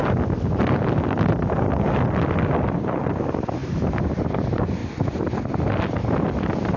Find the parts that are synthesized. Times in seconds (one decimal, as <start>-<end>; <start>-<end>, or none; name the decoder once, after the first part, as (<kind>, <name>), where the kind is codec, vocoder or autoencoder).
none